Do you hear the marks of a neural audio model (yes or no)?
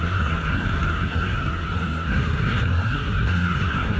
yes